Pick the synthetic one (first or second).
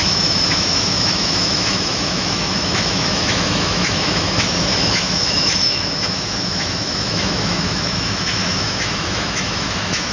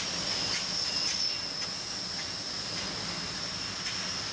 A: first